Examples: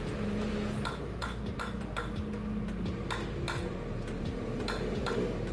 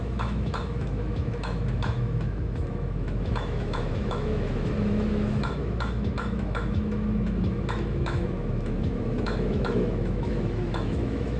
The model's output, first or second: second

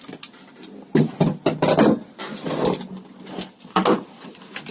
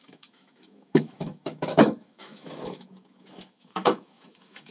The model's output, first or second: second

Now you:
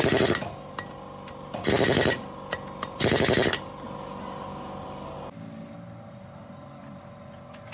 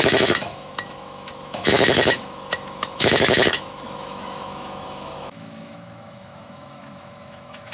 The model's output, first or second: second